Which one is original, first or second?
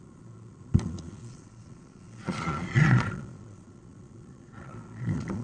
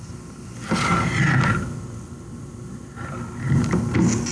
second